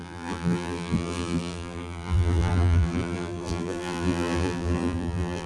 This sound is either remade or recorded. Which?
remade